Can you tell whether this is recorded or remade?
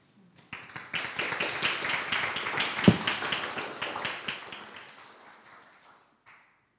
recorded